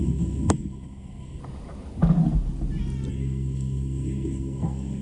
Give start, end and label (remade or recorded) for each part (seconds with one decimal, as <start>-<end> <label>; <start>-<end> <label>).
0.0-1.4 remade; 1.4-3.1 recorded; 3.1-5.0 remade

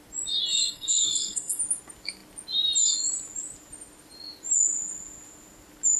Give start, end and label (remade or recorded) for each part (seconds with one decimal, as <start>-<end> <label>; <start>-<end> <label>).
0.0-0.5 recorded; 0.5-1.6 remade; 1.6-6.0 recorded